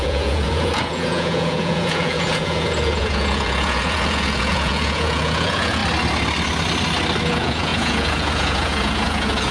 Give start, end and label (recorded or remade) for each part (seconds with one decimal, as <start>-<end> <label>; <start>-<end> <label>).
0.0-5.8 remade; 5.8-7.2 recorded; 7.2-9.5 remade